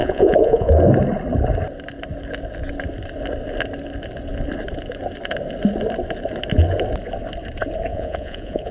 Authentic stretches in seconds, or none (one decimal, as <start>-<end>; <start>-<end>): 0.7-7.9